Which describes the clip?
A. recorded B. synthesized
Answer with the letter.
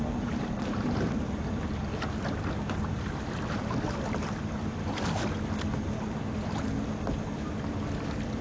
A